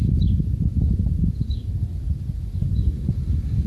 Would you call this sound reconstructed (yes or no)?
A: no